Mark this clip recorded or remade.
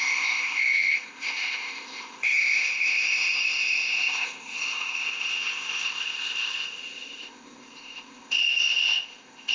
remade